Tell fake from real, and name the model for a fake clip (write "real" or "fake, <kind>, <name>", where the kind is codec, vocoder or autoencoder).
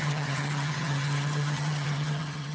fake, vocoder, HiFi-GAN